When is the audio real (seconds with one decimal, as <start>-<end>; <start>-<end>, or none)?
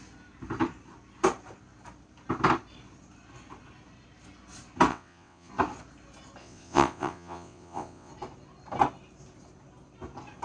0.0-4.9; 5.5-6.4; 8.1-10.4